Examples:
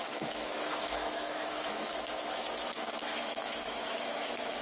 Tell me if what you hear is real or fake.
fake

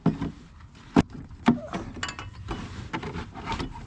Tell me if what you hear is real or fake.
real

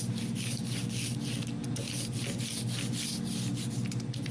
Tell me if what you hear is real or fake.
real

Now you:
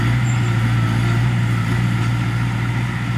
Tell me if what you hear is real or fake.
real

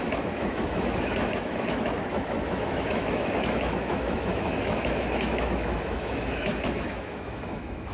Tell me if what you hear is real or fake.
fake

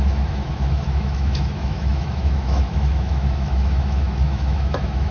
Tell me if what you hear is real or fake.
fake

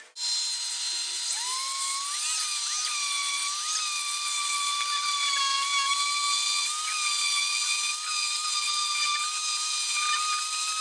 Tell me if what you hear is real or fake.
real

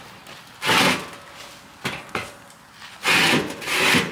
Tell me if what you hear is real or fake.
real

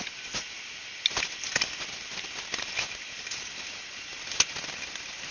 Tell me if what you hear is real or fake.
real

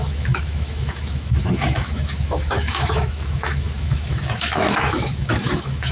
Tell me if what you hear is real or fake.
fake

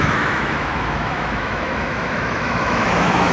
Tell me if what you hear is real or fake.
fake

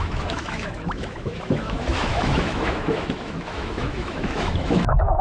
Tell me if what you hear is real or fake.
fake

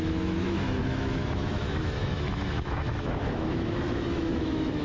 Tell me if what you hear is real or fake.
fake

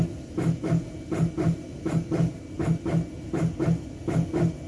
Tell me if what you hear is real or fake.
real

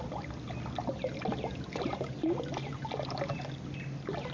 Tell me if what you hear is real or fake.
real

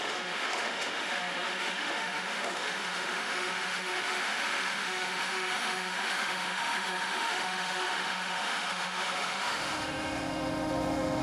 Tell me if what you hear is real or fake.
fake